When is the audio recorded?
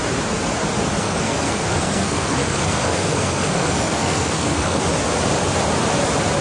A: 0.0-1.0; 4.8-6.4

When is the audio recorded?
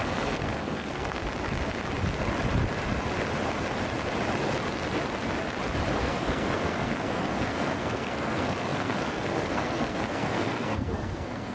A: 1.2-6.0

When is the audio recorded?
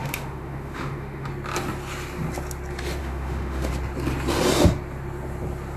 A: 1.3-3.0; 3.7-5.8